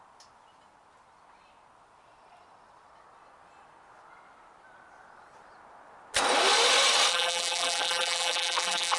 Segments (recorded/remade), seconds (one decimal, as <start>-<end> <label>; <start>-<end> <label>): 0.0-7.1 recorded; 7.1-9.0 remade